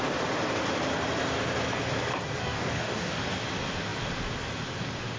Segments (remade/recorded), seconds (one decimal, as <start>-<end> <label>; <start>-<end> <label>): 0.0-2.4 recorded; 2.4-3.1 remade; 3.1-5.2 recorded

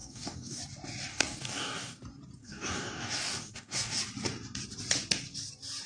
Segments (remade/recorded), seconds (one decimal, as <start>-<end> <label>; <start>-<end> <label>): 0.0-0.6 remade; 0.6-1.1 recorded; 1.1-2.0 remade; 2.0-2.4 recorded; 2.4-4.0 remade; 4.0-5.9 recorded

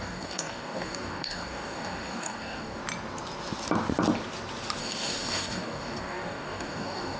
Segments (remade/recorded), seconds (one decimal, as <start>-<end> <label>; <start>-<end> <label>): 0.0-2.8 remade; 2.8-4.8 recorded; 4.8-7.2 remade

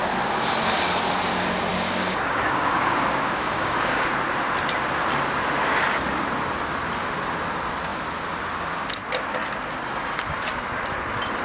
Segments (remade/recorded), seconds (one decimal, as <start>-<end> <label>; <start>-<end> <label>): 0.0-1.7 recorded; 1.7-4.1 remade; 4.1-11.4 recorded